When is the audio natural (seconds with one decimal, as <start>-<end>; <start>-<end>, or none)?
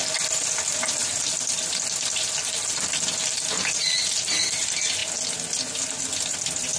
0.0-6.8